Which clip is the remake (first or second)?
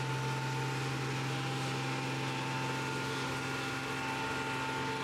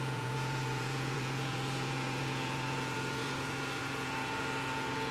second